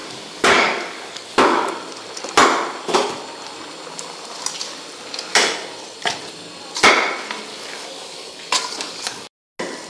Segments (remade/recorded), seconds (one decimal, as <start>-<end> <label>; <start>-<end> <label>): 0.0-1.7 remade; 1.7-7.5 recorded; 7.5-9.3 remade; 9.3-9.9 recorded

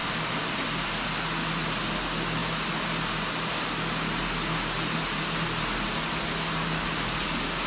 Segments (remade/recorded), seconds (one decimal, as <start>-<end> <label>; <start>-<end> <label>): 0.0-1.1 remade; 1.1-7.7 recorded

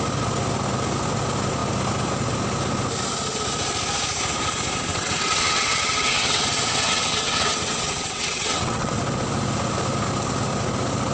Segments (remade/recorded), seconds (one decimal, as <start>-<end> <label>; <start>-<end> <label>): 0.0-4.9 recorded; 4.9-9.0 remade; 9.0-11.1 recorded